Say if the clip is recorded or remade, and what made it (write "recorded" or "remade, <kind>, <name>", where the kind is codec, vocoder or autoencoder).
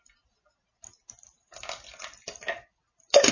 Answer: recorded